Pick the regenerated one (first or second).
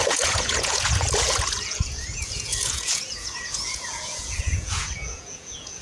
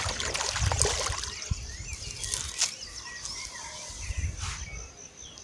first